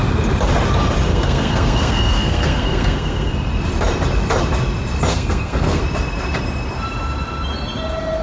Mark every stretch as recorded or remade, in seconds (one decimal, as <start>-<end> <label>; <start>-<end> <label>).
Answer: 0.0-1.1 recorded; 1.1-3.3 remade; 3.3-5.1 recorded; 5.1-5.8 remade; 5.8-8.2 recorded